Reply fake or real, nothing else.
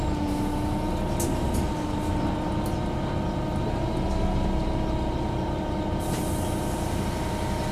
real